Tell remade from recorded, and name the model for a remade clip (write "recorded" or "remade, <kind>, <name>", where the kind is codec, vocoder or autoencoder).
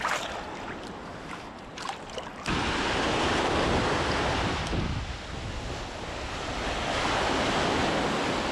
recorded